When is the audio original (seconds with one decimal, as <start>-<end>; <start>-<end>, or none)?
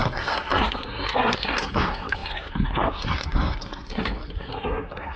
none